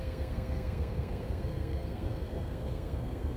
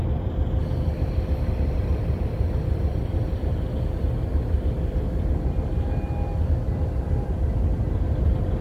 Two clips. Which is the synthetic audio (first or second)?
first